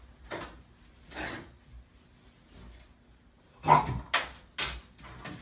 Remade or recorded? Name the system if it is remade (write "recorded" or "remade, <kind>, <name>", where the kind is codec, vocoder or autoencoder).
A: recorded